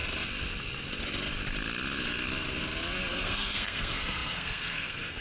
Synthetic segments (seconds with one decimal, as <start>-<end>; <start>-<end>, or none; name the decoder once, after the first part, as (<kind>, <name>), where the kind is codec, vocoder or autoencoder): 3.1-5.2 (codec, SNAC)